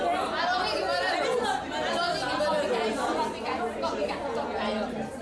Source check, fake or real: real